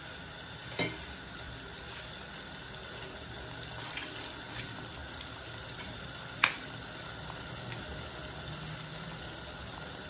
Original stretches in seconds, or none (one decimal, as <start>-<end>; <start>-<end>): 0.0-5.0; 6.0-10.1